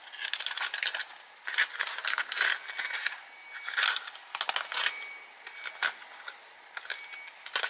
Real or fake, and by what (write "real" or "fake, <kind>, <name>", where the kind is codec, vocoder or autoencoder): real